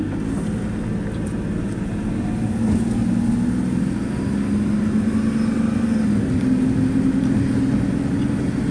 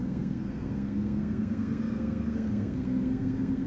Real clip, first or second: first